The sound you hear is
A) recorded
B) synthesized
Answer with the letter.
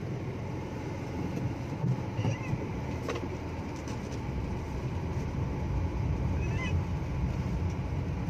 B